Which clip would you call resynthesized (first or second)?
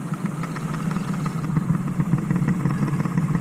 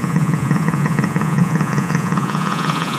second